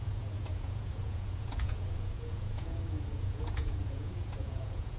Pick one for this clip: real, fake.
fake